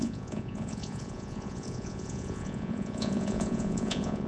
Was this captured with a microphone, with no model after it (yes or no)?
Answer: no